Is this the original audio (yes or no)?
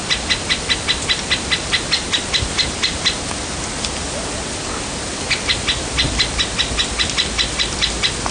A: yes